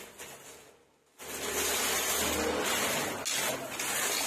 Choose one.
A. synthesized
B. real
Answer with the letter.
B